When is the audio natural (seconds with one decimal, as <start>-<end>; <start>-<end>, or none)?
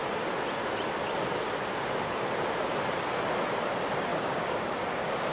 0.0-4.1; 4.7-5.3